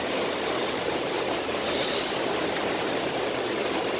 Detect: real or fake real